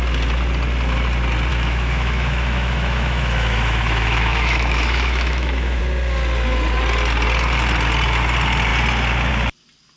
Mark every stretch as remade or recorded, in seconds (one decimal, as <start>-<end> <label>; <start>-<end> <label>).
0.0-1.5 recorded; 1.5-5.8 remade; 5.8-10.0 recorded